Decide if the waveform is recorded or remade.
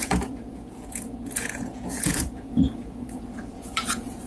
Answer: remade